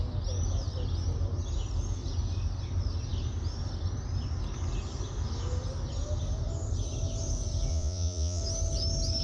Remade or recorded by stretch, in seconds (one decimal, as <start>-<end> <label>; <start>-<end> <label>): 0.0-7.7 recorded; 7.7-8.4 remade; 8.4-9.2 recorded

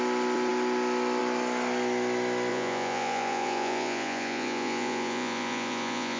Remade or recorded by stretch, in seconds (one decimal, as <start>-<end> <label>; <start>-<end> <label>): 0.0-2.5 recorded; 2.5-6.2 remade